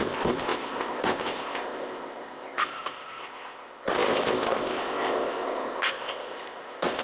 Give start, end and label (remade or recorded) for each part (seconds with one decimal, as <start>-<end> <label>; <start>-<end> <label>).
0.0-7.0 remade